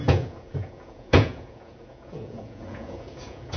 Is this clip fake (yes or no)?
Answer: yes